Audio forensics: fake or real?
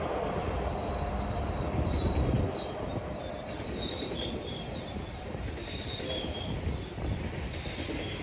fake